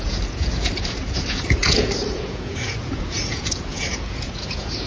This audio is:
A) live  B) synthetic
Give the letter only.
B